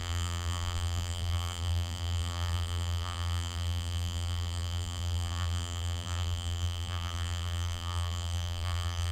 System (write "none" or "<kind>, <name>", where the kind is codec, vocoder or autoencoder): vocoder, BigVGAN v2